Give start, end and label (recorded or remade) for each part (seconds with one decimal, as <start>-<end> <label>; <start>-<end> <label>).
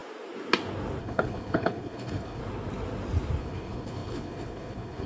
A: 0.0-1.0 recorded; 1.0-2.4 remade; 2.4-3.4 recorded; 3.4-5.1 remade